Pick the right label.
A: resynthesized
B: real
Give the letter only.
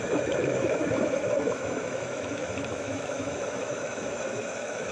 A